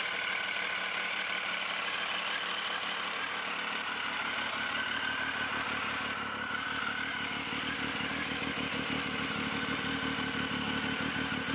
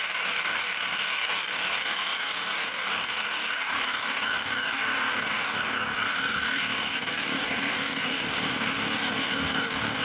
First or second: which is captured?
first